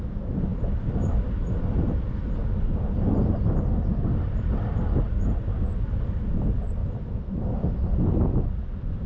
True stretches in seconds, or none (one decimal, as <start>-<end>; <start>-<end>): 0.0-6.8; 7.3-9.1